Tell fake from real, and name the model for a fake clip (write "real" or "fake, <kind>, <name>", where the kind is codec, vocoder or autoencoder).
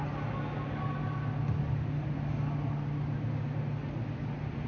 real